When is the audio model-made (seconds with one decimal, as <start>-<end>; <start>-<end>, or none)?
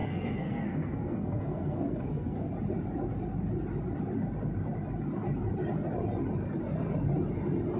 0.0-2.5